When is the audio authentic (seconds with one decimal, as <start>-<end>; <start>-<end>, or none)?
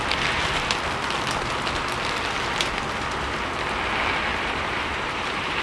0.0-4.3